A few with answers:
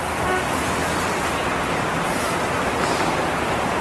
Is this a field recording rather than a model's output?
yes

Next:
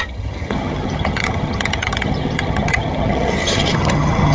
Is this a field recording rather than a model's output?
no